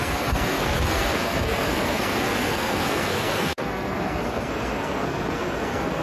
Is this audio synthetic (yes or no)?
yes